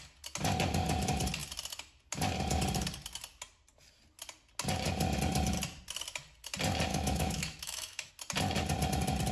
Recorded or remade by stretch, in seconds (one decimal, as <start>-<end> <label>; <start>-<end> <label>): 0.0-6.9 recorded; 6.9-8.1 remade; 8.1-9.3 recorded